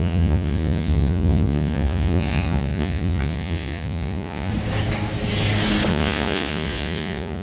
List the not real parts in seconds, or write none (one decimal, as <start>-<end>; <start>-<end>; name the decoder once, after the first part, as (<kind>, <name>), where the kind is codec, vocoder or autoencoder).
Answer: 0.0-4.5 (vocoder, Vocos); 5.9-7.4